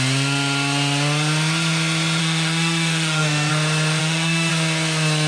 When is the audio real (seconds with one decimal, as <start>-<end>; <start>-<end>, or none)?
0.0-2.2; 3.5-4.0; 4.5-5.3